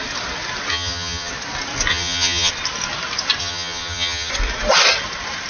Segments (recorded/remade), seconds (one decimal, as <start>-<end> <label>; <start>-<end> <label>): 0.0-0.7 recorded; 0.7-1.3 remade; 1.3-1.9 recorded; 1.9-2.5 remade; 2.5-3.4 recorded; 3.4-4.3 remade; 4.3-5.5 recorded